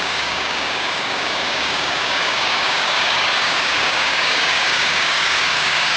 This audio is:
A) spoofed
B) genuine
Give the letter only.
A